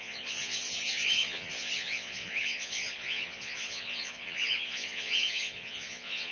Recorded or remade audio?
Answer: remade